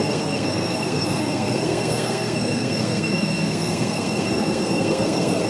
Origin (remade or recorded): remade